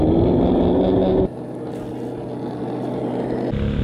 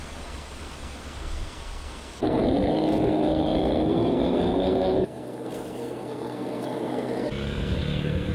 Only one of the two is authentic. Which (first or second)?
first